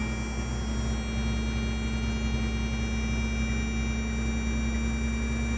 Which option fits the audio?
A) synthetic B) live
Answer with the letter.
B